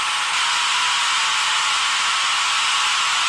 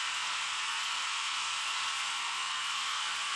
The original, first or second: first